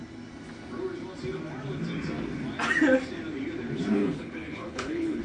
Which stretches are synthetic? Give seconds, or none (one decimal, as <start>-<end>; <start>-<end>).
4.0-5.2